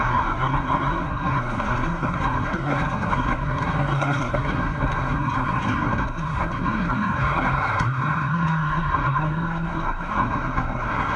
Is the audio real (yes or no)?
no